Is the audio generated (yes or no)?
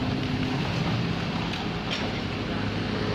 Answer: no